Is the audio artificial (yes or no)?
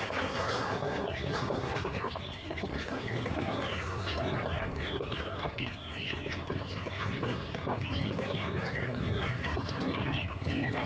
yes